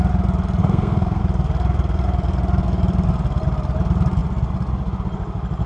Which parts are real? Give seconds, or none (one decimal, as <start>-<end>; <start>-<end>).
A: 0.0-0.6; 1.2-5.7